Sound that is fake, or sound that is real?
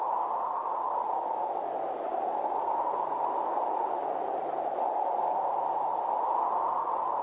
real